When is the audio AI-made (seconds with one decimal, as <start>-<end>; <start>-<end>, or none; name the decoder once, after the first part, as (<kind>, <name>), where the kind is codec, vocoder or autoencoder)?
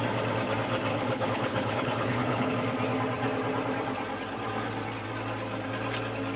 0.9-2.5 (codec, HILCodec)